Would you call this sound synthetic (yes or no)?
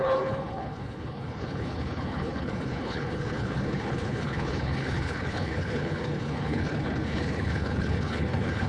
yes